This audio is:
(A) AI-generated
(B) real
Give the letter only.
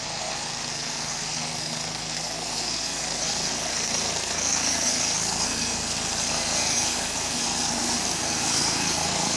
A